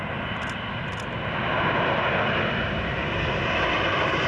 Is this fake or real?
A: real